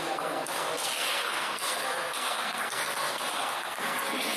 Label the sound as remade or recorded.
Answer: remade